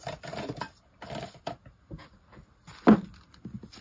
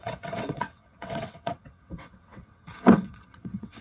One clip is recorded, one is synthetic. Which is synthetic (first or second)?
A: second